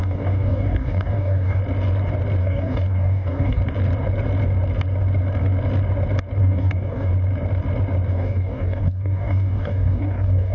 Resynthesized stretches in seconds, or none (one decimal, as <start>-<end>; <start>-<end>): 0.0-1.6; 2.4-3.6; 6.4-7.1; 8.1-10.5